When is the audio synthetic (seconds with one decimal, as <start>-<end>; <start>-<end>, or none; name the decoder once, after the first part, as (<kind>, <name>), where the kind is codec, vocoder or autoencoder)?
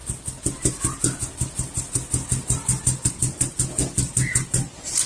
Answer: none